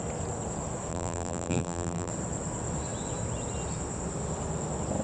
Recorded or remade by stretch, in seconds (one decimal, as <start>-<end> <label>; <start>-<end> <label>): 0.0-0.9 recorded; 0.9-2.1 remade; 2.1-5.0 recorded